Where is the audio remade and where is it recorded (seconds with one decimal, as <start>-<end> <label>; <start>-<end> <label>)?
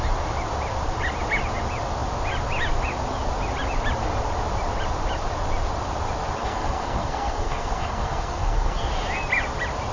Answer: 0.0-6.4 recorded; 6.4-8.9 remade; 8.9-9.9 recorded